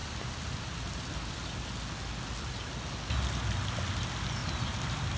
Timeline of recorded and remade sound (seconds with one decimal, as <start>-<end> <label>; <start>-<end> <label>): 0.0-1.3 remade; 1.3-4.4 recorded; 4.4-5.2 remade